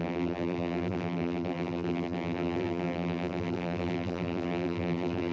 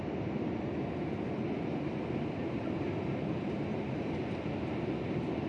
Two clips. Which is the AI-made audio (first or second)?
first